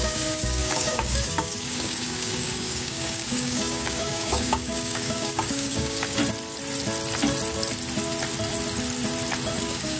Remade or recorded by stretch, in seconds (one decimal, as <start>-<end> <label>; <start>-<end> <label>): 0.0-6.2 remade; 6.2-9.6 recorded; 9.6-10.0 remade